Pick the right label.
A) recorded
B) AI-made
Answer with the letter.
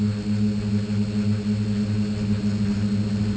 A